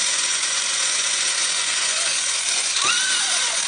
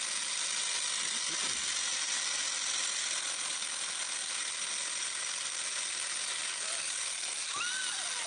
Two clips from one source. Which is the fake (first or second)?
first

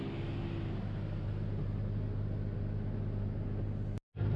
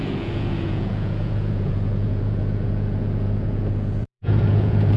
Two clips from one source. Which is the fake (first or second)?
second